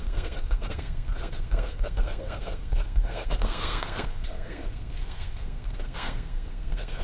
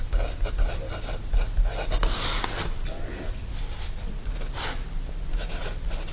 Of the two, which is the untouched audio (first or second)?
second